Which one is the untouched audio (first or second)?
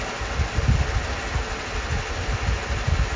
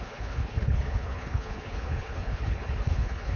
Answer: first